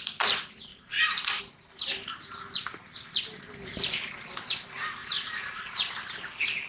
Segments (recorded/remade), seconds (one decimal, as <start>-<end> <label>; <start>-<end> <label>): 0.0-0.7 recorded; 0.7-1.4 remade; 1.4-5.0 recorded; 5.0-5.9 remade; 5.9-6.7 recorded